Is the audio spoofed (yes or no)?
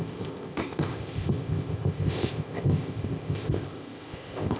yes